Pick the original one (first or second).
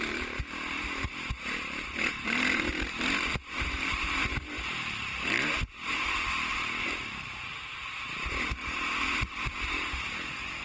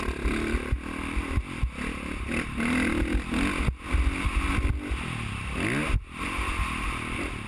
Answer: second